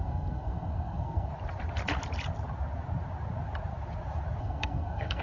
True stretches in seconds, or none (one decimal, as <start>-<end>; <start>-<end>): 1.3-4.4